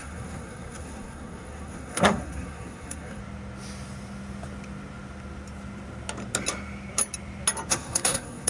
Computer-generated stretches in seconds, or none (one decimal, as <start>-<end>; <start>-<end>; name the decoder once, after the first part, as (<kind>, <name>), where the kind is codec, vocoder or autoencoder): 0.0-3.2 (codec, SNAC); 7.7-8.5